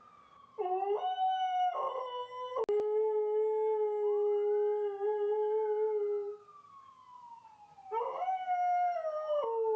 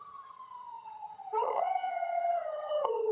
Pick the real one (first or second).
first